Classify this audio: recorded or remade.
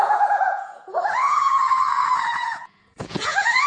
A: remade